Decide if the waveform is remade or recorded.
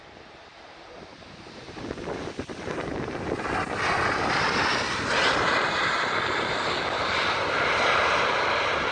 recorded